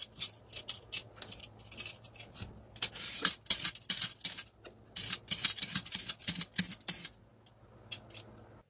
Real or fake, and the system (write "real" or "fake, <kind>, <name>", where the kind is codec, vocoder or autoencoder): real